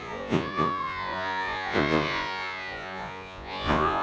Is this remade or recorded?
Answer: remade